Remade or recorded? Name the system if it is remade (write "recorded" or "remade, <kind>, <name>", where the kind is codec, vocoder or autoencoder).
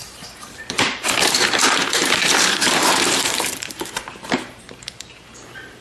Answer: remade, vocoder, BigVGAN v2